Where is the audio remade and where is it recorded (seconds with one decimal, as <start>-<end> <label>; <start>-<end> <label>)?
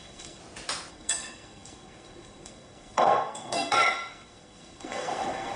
0.0-0.4 remade; 0.4-0.9 recorded; 0.9-5.6 remade